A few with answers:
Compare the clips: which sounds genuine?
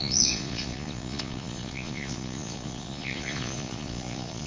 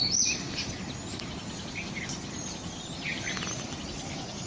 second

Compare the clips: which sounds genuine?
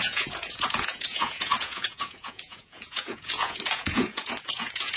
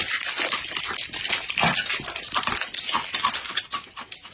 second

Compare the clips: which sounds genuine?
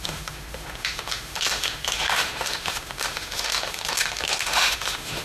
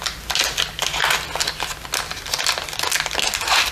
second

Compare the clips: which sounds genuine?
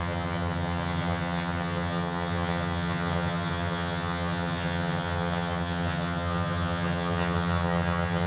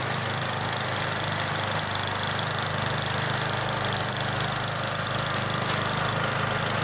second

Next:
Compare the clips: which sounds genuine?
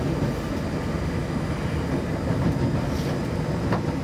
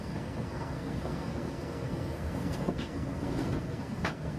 first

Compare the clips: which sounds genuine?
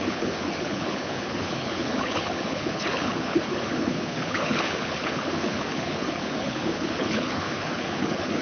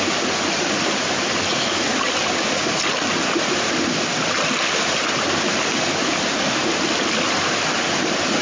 second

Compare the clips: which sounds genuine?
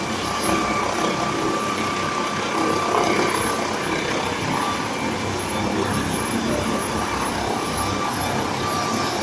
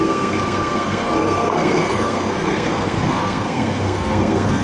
first